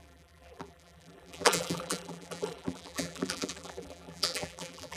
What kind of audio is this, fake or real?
fake